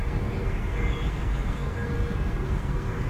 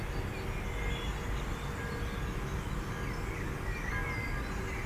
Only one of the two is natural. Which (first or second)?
second